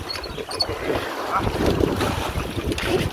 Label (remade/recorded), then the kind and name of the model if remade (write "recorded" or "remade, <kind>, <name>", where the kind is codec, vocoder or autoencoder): remade, vocoder, BigVGAN v2